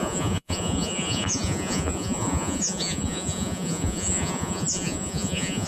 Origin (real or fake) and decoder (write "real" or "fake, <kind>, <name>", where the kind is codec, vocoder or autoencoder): fake, vocoder, Vocos